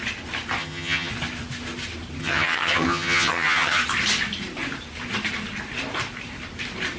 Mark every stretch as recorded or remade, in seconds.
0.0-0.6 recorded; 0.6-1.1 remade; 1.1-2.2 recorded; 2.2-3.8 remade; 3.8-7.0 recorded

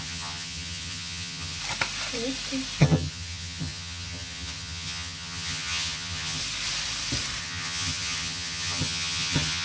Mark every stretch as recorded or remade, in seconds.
0.0-1.6 remade; 1.6-2.8 recorded; 2.8-6.4 remade; 6.4-7.4 recorded; 7.4-9.6 remade

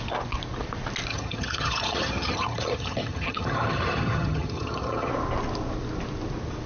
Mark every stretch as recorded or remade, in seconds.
0.0-1.1 recorded; 1.1-5.1 remade; 5.1-6.7 recorded

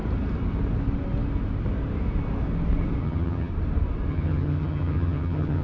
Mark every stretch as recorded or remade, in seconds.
0.0-3.0 recorded; 3.0-3.5 remade; 3.5-4.1 recorded; 4.1-5.6 remade

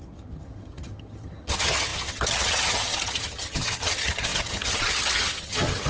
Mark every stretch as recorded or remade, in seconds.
0.0-5.9 remade

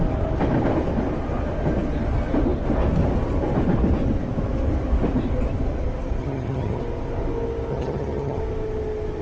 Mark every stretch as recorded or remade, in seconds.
0.0-6.2 recorded; 6.2-6.8 remade; 6.8-7.7 recorded; 7.7-8.4 remade; 8.4-9.2 recorded

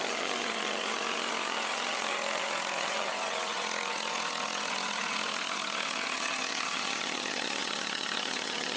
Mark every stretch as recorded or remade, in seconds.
0.0-8.8 remade